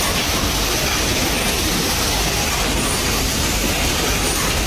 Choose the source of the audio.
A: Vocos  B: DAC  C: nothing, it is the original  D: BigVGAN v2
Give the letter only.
C